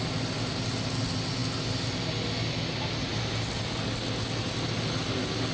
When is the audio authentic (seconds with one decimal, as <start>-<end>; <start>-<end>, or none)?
0.0-5.5